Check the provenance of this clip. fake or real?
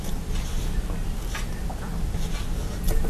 real